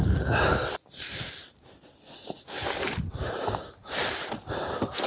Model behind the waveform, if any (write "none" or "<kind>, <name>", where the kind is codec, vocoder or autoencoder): none